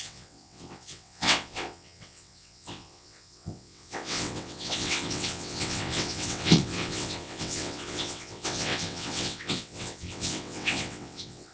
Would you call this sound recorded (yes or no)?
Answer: no